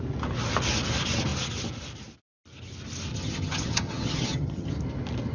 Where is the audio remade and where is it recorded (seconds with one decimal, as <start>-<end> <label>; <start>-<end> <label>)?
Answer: 0.0-3.1 recorded; 3.1-4.7 remade; 4.7-5.3 recorded